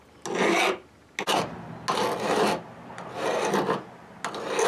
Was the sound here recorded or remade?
recorded